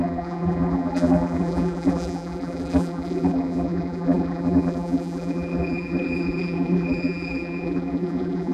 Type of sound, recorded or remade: remade